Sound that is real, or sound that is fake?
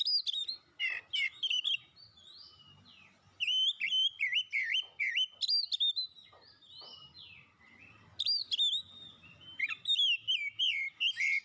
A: real